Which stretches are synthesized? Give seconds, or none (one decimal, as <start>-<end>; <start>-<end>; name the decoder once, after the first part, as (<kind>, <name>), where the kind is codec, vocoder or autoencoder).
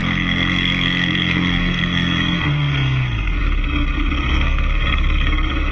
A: 0.0-5.7 (codec, SNAC)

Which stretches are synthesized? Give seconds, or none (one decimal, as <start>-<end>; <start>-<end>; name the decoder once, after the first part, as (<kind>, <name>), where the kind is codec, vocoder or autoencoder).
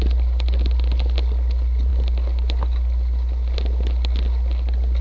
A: none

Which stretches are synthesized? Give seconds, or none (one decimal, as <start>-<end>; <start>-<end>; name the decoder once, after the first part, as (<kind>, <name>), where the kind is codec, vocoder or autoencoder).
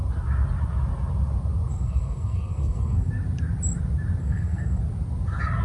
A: 1.7-3.1 (codec, SNAC); 4.2-4.8